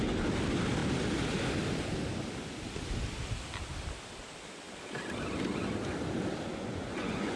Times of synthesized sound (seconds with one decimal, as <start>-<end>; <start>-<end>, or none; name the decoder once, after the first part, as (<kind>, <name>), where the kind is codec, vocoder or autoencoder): 6.5-7.4 (vocoder, Vocos)